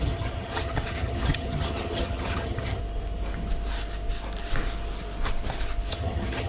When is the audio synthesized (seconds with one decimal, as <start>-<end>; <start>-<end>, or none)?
0.0-2.8; 5.9-6.5